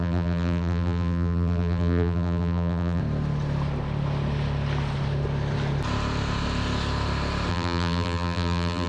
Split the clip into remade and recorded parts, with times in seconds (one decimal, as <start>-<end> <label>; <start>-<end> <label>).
0.0-3.0 remade; 3.0-7.5 recorded; 7.5-8.9 remade